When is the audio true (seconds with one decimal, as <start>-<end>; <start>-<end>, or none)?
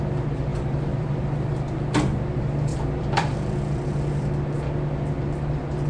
0.0-0.5; 1.2-2.7; 3.6-5.9